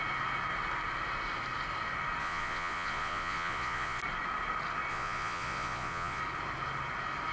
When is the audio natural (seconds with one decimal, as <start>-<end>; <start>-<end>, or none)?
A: 0.0-2.2; 4.0-4.9; 6.2-7.3